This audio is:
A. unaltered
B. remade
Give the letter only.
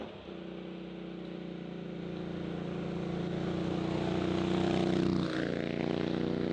A